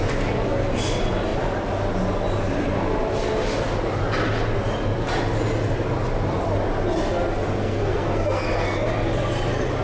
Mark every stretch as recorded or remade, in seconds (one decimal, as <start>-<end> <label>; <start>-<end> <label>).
0.0-7.6 recorded; 7.6-8.9 remade; 8.9-9.8 recorded